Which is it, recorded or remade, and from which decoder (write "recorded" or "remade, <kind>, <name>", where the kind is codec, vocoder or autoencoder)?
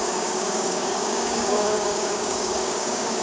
remade, codec, DAC